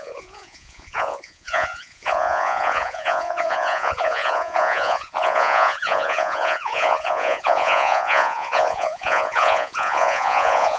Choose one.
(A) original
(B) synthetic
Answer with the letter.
B